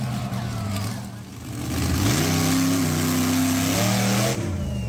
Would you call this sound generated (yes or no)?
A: no